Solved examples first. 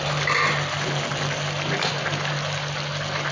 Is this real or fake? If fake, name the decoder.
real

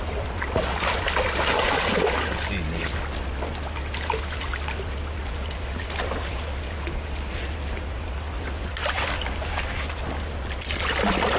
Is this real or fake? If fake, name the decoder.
real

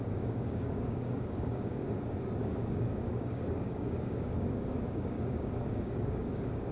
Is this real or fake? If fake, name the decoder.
fake, codec, DAC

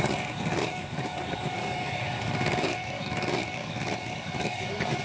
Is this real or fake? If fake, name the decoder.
fake, codec, DAC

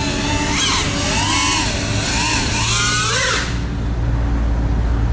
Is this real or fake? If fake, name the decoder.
real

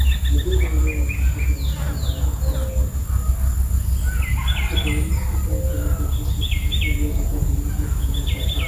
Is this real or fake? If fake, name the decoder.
real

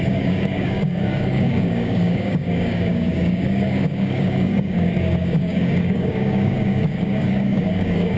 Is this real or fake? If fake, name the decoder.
fake, codec, DAC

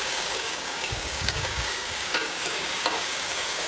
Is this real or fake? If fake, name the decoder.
fake, codec, DAC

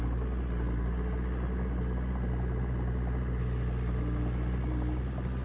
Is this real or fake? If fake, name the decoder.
real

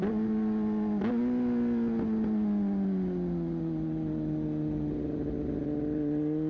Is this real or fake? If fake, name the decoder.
real